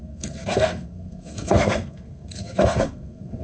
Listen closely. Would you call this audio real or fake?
fake